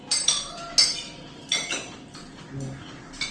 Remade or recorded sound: recorded